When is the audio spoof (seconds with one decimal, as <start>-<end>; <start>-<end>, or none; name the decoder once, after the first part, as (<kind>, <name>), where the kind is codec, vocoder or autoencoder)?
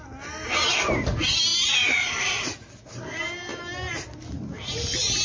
none